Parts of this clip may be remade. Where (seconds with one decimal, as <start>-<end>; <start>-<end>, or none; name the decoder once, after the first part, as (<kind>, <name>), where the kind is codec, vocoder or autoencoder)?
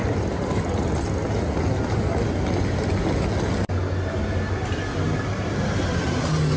none